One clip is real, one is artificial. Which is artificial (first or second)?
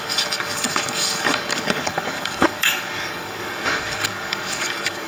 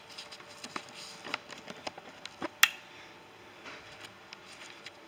first